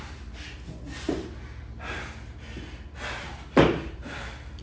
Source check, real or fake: real